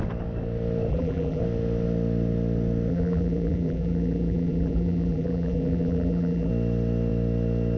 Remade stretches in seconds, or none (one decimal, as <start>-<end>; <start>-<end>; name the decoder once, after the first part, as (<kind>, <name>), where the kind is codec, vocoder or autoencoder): 0.9-1.4 (vocoder, BigVGAN v2); 2.9-6.5